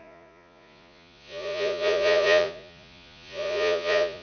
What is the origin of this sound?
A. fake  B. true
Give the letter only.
A